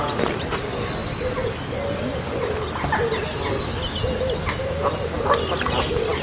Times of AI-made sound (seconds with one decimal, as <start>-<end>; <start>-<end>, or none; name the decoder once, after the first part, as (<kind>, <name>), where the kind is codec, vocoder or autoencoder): none